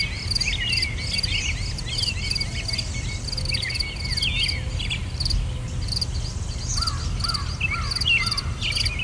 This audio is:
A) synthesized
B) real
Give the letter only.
B